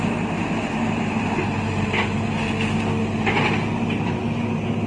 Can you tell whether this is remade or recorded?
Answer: recorded